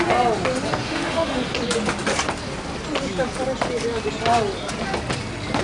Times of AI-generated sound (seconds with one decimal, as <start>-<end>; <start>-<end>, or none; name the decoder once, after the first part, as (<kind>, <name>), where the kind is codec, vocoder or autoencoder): 0.8-1.4 (autoencoder, DAC-VAE)